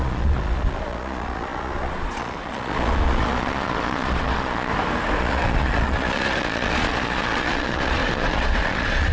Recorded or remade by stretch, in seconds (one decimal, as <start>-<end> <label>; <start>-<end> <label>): 0.0-4.7 remade; 4.7-5.2 recorded; 5.2-9.1 remade